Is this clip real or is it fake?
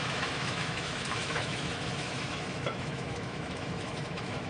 fake